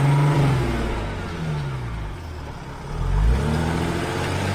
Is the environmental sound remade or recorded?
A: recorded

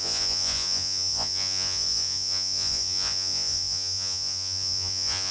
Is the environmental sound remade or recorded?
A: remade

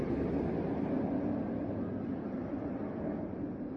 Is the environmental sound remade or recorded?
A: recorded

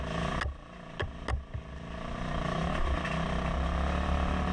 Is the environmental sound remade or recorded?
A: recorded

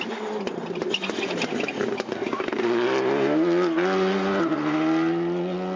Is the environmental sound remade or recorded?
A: recorded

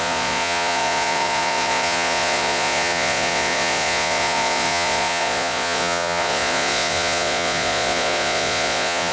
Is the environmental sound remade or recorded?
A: remade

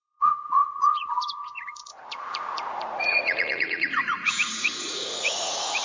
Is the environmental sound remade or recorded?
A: remade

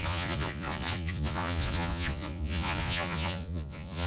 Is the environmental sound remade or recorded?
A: remade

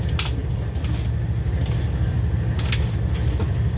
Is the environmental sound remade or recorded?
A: recorded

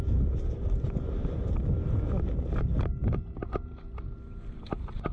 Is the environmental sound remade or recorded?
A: recorded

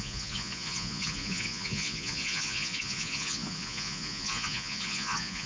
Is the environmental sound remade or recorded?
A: remade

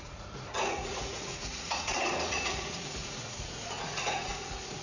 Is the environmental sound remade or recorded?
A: remade